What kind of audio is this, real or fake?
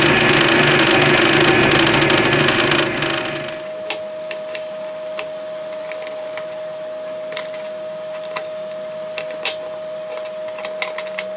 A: real